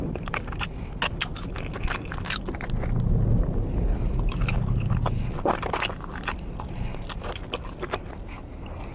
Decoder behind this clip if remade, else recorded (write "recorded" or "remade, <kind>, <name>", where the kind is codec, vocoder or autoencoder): recorded